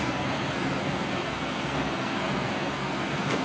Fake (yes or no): yes